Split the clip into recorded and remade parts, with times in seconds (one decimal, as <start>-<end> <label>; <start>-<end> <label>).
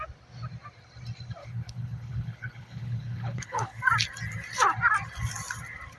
0.0-1.4 recorded; 1.4-3.8 remade; 3.8-6.0 recorded